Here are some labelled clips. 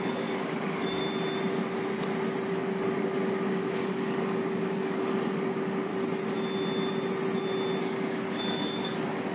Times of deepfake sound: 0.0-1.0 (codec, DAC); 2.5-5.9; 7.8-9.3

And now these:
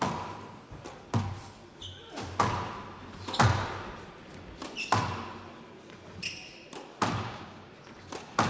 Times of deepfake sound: 7.2-7.7 (codec, DAC)

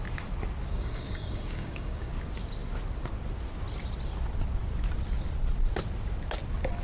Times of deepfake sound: 0.7-2.1 (codec, DAC)

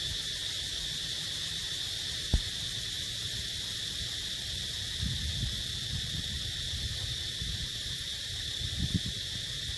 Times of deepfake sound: none

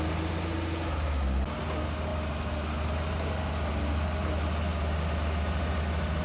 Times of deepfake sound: none

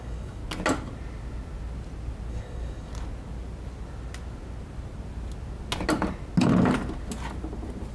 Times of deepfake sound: 0.0-0.4 (codec, DAC); 2.3-2.9

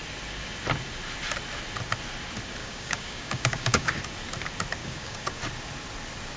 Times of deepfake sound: 2.6-4.0 (codec, DAC); 4.8-5.4

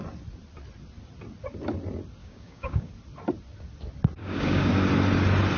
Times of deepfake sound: 2.2-2.9 (codec, DAC); 4.2-4.7